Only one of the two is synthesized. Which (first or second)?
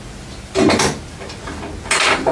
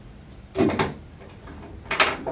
second